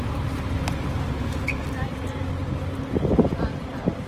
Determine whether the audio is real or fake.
real